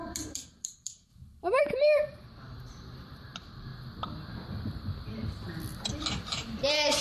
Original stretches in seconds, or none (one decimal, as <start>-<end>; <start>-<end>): 3.7-5.9